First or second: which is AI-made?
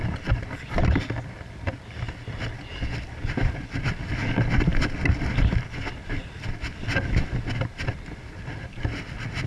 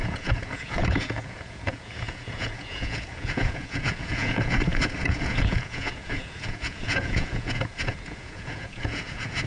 second